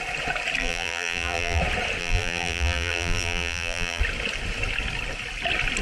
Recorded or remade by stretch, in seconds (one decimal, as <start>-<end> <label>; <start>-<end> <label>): 0.0-0.6 recorded; 0.6-1.6 remade; 1.6-2.0 recorded; 2.0-4.0 remade; 4.0-5.8 recorded